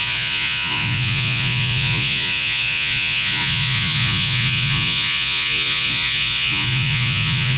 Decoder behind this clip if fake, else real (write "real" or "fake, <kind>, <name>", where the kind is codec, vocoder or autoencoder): fake, vocoder, Vocos